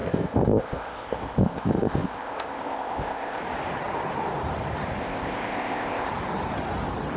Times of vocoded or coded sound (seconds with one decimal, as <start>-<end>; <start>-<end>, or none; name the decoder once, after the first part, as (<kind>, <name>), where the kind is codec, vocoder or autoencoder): 0.0-3.4 (codec, ZipCodec); 5.0-6.1